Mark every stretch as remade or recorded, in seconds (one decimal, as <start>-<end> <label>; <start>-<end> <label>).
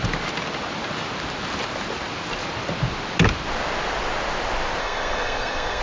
0.0-4.8 recorded; 4.8-5.8 remade